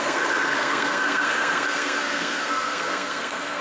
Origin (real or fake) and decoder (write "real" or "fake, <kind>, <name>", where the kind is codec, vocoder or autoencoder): fake, codec, SNAC